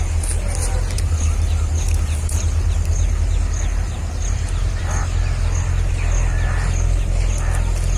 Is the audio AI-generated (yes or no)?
no